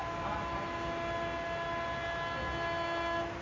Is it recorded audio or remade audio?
recorded